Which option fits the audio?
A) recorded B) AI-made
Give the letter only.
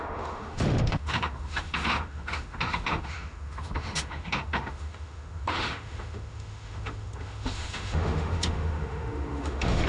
B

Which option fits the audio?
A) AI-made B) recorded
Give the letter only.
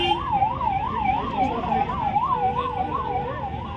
B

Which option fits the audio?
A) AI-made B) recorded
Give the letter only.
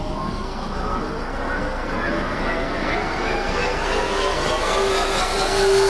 A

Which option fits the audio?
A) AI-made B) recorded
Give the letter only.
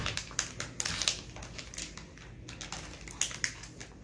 B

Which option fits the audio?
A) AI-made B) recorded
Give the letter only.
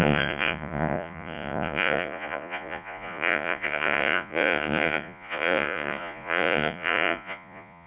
A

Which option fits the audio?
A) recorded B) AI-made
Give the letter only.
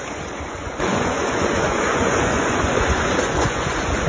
B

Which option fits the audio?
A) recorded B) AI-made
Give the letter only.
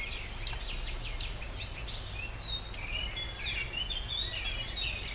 A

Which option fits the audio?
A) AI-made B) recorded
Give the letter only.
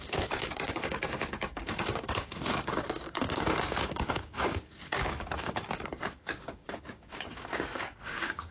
A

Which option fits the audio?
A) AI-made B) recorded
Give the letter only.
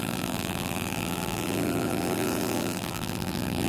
A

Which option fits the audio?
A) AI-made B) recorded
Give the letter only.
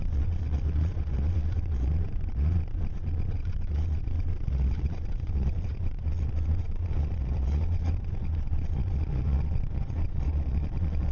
A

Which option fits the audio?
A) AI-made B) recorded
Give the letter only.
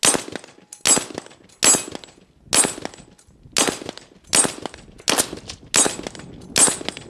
B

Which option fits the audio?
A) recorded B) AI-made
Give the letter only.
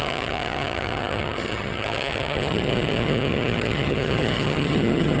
B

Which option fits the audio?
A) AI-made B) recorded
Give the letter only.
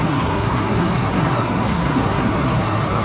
A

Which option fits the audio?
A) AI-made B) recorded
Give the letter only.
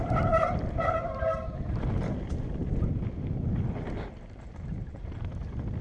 B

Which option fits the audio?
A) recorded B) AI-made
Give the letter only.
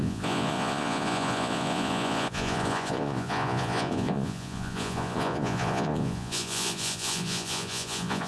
B